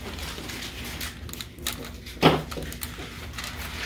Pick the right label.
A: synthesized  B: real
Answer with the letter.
B